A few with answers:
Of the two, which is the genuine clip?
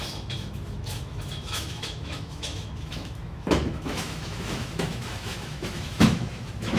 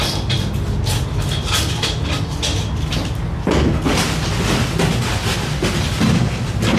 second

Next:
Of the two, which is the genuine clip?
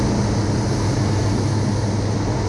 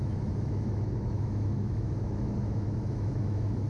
first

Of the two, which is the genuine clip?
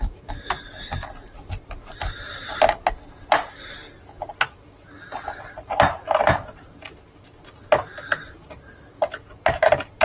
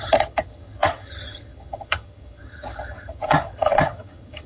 first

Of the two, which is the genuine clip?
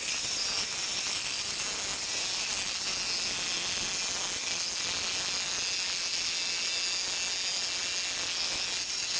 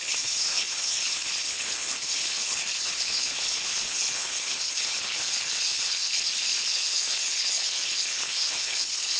first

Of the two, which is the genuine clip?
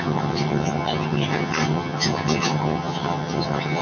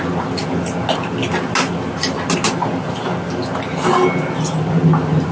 second